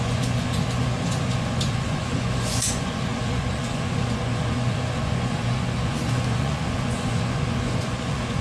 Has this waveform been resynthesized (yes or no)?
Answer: yes